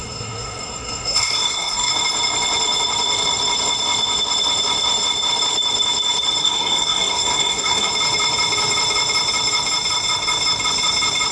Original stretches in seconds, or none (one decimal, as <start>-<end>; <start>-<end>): 1.9-6.4; 7.9-11.3